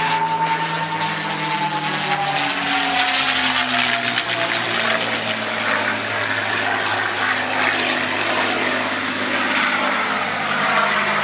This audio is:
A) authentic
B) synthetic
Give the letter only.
A